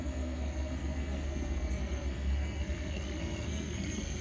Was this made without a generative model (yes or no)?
no